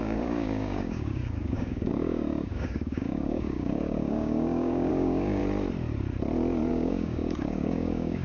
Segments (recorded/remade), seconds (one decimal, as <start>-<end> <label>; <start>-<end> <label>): 0.0-5.4 remade; 5.4-6.7 recorded; 6.7-8.2 remade